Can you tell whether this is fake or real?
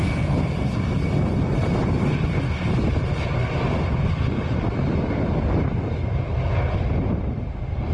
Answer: real